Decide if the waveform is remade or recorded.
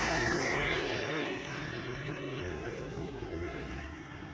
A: remade